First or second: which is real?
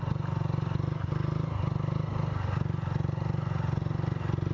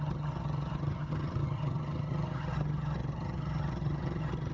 first